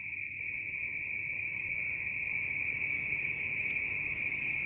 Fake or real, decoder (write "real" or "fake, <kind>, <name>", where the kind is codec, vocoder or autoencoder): real